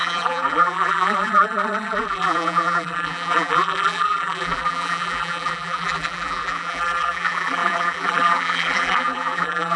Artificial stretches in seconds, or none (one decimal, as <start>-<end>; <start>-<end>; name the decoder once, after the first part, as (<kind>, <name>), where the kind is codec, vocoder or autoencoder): 0.0-9.8 (vocoder, BigVGAN v2)